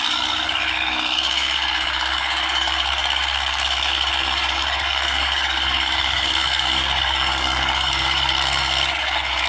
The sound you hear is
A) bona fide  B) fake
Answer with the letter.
B